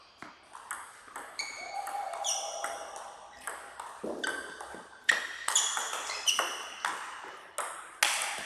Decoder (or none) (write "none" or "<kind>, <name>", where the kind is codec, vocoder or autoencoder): none